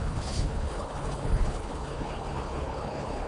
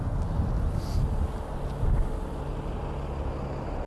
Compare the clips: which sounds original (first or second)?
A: second